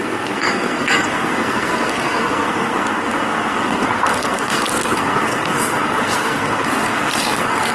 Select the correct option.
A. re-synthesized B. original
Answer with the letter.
A